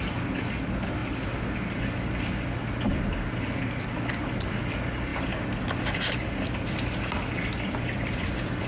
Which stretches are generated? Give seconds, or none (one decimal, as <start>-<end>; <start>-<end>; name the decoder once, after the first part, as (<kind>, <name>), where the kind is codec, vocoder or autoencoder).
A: none